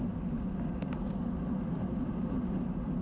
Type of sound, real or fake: real